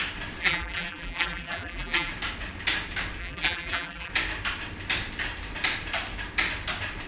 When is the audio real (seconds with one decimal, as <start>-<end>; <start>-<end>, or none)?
0.0-0.4; 2.1-3.2; 4.1-7.1